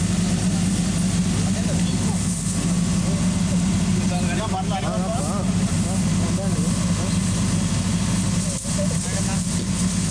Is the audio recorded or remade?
recorded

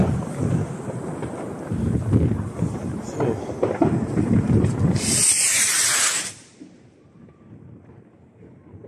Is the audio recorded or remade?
recorded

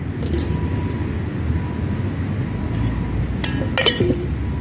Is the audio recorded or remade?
recorded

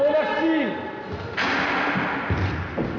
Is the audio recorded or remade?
recorded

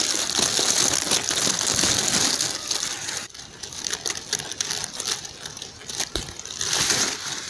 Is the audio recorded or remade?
recorded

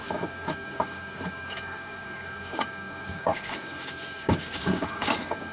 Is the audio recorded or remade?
remade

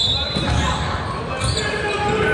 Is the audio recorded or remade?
recorded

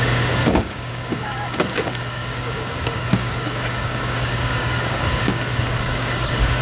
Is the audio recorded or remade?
remade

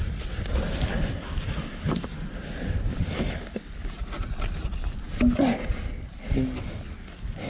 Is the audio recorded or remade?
recorded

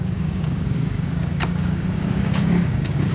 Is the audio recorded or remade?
remade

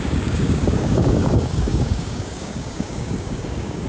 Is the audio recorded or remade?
remade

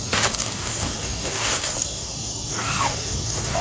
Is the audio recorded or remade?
remade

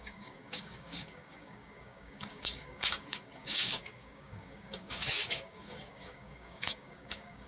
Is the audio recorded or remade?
remade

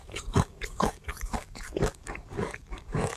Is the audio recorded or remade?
remade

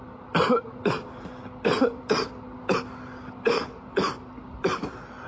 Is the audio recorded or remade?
recorded